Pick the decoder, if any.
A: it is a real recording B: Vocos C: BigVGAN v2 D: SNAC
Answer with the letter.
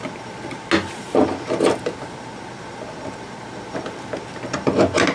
A